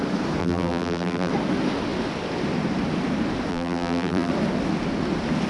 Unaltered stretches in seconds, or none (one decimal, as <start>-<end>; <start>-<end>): 0.0-0.4; 1.3-3.5; 4.3-5.5